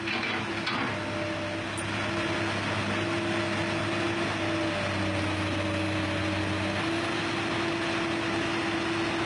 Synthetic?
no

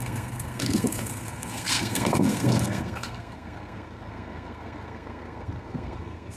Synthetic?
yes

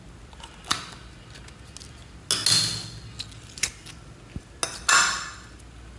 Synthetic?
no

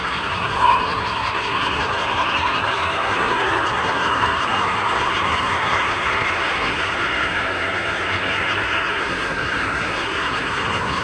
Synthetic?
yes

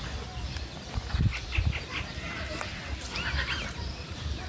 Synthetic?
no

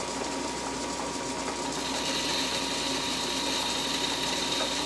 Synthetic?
no